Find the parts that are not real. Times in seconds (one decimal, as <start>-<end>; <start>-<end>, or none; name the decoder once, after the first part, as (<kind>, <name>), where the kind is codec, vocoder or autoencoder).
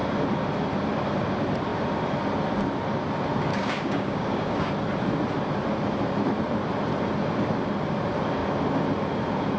3.5-4.7 (codec, DAC)